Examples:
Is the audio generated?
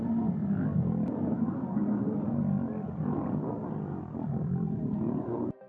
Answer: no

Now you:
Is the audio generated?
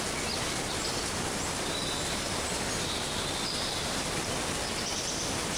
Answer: no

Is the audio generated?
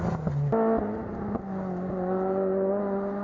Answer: no